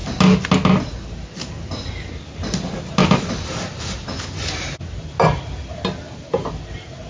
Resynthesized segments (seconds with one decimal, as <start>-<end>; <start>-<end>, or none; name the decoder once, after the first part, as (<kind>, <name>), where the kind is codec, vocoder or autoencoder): none